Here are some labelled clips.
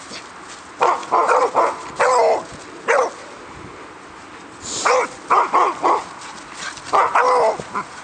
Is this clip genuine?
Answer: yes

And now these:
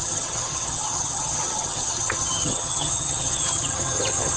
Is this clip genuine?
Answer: no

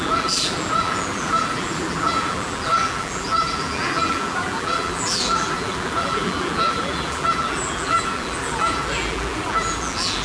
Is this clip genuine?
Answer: no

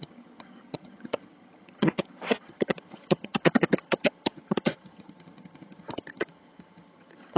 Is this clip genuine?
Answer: no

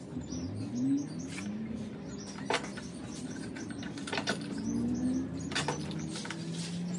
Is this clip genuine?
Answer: yes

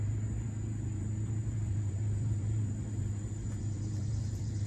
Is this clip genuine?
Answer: no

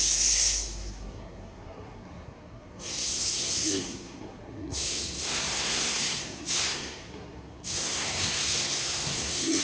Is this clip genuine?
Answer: no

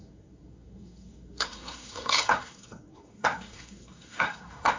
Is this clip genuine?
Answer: no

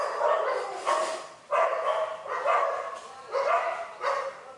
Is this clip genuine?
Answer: yes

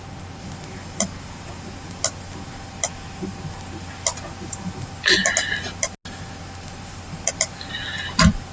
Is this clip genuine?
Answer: yes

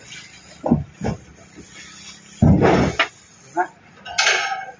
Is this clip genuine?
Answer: yes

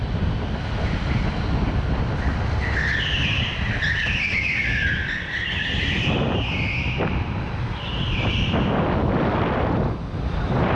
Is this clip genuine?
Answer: yes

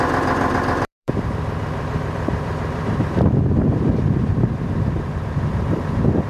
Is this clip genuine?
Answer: no